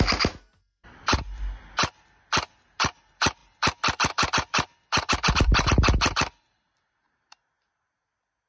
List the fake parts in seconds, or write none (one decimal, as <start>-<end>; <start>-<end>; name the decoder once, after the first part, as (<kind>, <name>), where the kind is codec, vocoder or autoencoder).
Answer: none